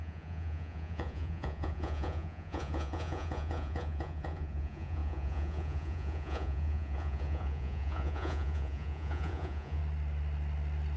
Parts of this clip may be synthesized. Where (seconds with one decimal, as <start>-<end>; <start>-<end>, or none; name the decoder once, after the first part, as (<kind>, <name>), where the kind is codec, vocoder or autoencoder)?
0.0-9.8 (vocoder, Vocos)